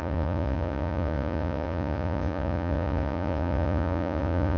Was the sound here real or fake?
fake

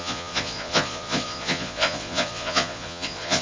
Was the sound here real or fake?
fake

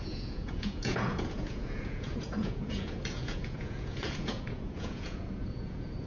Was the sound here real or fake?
fake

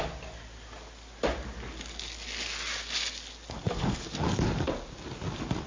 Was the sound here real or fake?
real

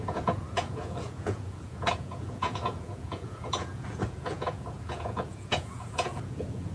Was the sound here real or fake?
fake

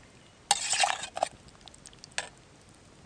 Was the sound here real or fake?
real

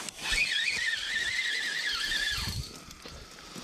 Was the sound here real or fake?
real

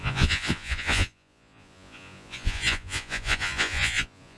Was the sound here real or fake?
fake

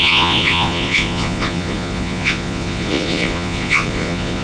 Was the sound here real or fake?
fake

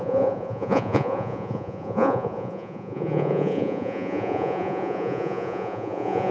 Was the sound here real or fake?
fake